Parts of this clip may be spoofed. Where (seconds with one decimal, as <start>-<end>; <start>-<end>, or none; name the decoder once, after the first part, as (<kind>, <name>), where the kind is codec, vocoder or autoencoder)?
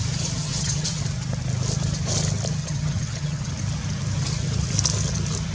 0.4-1.0 (vocoder, HiFi-GAN); 2.6-3.5